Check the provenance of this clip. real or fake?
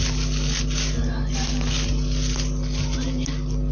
real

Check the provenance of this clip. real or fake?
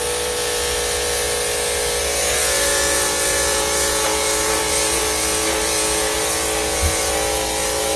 fake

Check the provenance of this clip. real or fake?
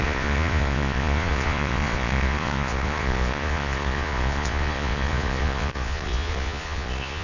fake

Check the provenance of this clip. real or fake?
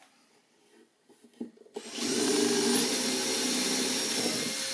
real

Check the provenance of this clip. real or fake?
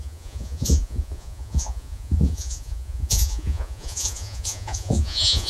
fake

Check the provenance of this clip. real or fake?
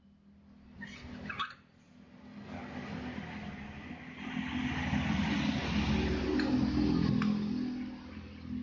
real